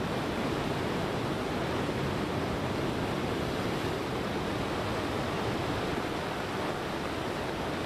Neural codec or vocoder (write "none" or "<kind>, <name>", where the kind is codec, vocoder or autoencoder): none